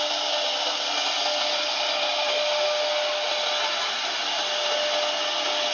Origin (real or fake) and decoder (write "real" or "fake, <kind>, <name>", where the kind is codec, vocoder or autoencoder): real